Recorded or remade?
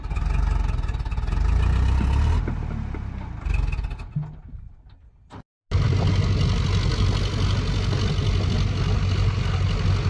recorded